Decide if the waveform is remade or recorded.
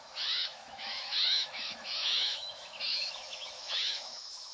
remade